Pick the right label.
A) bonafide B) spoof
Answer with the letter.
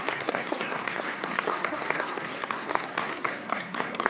B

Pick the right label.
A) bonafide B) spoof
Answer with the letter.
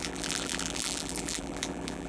B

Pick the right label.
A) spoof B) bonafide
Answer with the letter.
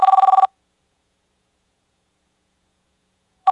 A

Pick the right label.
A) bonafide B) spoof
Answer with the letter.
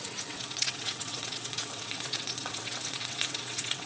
B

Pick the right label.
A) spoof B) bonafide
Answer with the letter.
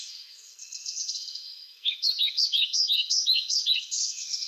A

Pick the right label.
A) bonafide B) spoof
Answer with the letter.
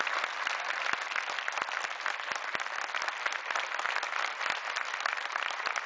A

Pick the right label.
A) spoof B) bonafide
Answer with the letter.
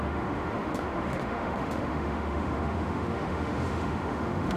A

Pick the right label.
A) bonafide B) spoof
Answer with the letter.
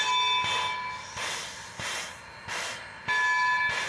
A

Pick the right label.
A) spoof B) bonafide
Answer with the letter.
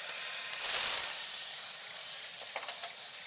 A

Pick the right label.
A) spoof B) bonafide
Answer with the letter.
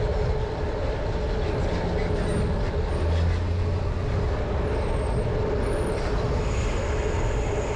B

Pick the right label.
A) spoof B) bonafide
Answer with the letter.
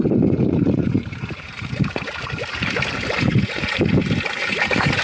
A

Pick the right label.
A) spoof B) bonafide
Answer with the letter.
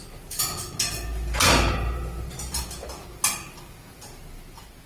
B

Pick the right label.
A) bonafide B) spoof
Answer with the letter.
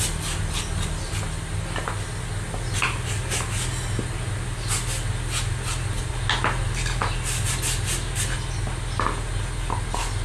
A